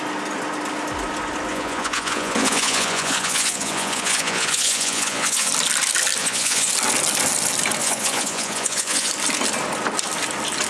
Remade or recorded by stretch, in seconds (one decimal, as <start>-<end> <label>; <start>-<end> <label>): 0.0-1.5 recorded; 1.5-5.5 remade; 5.5-6.2 recorded; 6.2-6.7 remade; 6.7-7.8 recorded; 7.8-9.1 remade; 9.1-10.7 recorded